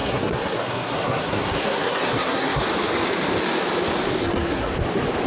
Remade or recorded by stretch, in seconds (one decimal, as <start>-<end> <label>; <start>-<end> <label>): 0.0-2.6 remade; 2.6-4.2 recorded; 4.2-4.7 remade; 4.7-5.3 recorded